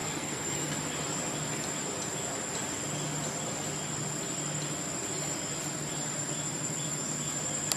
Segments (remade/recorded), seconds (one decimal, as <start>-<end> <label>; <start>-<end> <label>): 0.0-0.7 remade; 0.7-7.8 recorded